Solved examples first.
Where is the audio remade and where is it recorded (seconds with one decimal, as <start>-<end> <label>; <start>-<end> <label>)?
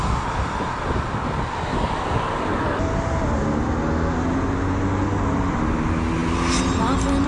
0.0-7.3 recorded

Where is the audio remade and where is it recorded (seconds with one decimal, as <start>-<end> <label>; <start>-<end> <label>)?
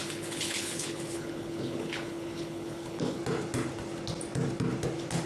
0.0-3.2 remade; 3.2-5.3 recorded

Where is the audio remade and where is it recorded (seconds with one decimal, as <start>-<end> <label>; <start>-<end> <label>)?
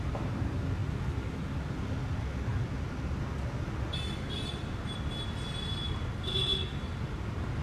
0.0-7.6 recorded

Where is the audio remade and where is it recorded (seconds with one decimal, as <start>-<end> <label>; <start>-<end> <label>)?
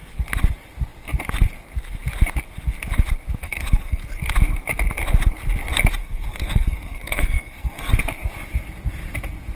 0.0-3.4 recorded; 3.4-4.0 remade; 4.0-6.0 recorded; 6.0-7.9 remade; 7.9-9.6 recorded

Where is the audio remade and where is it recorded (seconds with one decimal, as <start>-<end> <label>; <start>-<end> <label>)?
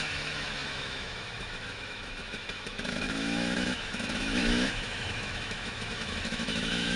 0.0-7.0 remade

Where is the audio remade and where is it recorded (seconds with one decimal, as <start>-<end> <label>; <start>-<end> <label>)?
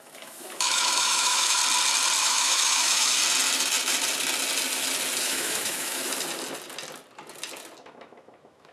0.0-1.6 remade; 1.6-2.2 recorded; 2.2-3.2 remade; 3.2-5.2 recorded; 5.2-6.0 remade; 6.0-7.8 recorded; 7.8-8.7 remade